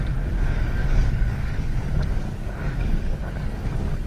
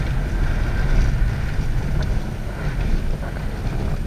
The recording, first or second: second